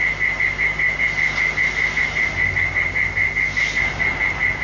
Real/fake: real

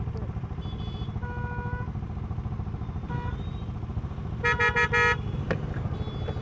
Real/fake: real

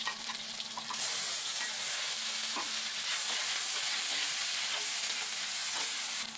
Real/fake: real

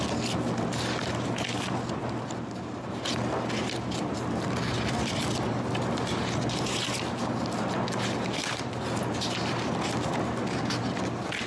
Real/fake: real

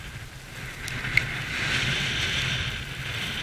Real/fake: real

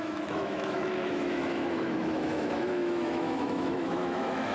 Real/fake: fake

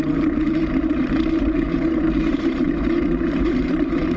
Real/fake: fake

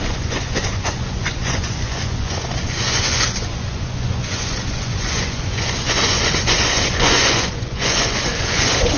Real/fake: fake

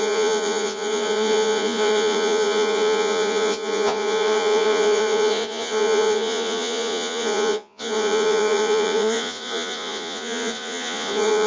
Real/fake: fake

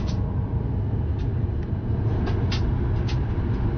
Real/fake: real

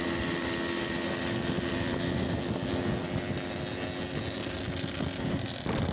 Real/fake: real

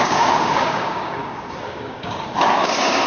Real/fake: fake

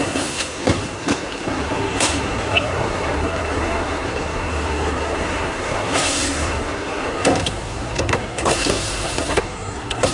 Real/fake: fake